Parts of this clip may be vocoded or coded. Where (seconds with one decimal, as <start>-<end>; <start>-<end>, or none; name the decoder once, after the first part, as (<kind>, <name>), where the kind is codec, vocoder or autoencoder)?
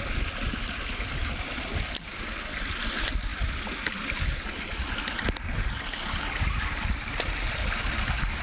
none